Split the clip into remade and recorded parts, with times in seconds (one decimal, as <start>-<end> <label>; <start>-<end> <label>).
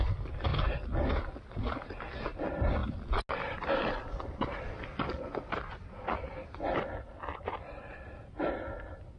0.0-9.2 recorded